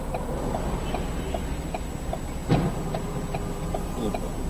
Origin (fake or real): real